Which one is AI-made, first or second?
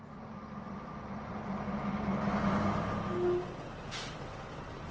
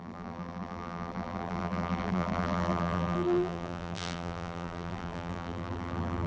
second